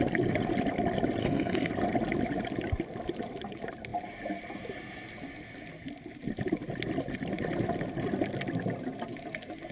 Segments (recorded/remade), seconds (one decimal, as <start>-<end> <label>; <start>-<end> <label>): 0.0-1.2 recorded; 1.2-1.7 remade; 1.7-9.7 recorded